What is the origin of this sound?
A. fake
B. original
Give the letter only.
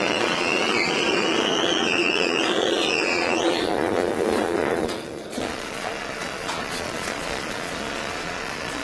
A